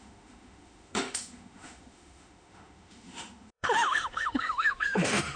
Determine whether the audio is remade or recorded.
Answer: remade